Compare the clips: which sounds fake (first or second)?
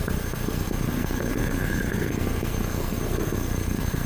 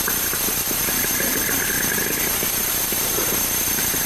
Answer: first